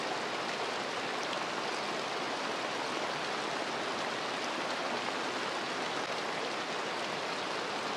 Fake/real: real